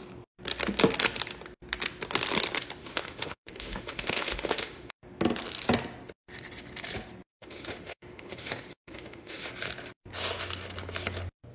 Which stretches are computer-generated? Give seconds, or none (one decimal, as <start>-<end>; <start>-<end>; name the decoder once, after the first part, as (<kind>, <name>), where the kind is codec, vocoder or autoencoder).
2.8-5.0 (autoencoder, DAC-VAE); 7.3-9.5